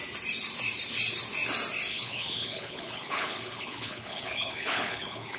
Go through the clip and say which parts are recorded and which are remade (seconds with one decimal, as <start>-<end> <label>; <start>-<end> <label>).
0.0-1.9 recorded; 1.9-5.4 remade